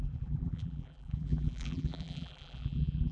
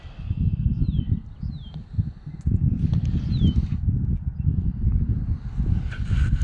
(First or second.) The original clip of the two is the second